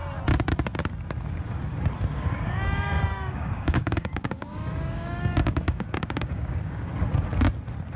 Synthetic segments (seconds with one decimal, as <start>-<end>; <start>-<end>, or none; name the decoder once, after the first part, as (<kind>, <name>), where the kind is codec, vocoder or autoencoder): 2.1-6.9 (codec, DAC)